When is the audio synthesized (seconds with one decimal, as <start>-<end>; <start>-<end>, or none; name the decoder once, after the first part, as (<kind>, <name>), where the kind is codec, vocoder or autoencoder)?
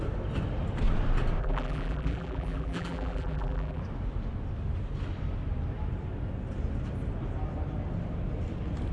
1.4-3.8 (vocoder, BigVGAN v2)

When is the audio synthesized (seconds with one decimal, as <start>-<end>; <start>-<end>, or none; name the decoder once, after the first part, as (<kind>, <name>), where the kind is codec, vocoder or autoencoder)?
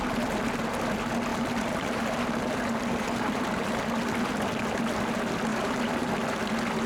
1.3-3.8 (vocoder, BigVGAN v2); 5.5-6.1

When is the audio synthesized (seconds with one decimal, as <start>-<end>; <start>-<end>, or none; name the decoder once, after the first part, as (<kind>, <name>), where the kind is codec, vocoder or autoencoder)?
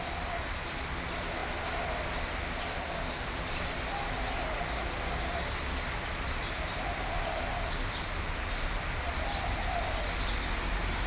none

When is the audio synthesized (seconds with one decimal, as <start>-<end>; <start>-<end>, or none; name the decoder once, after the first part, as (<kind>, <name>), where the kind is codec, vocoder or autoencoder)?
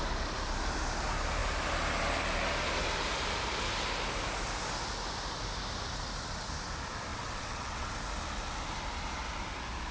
7.1-7.9 (vocoder, WaveNeXt)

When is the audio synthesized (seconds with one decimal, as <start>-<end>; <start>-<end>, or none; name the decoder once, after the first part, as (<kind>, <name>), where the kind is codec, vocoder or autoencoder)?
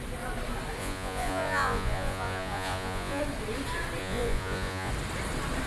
0.8-3.2 (vocoder, Vocos); 4.0-4.9